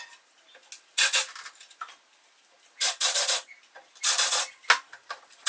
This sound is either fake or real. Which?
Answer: real